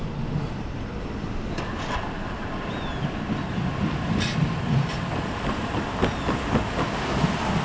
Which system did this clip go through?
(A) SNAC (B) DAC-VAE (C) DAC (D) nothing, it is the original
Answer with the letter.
D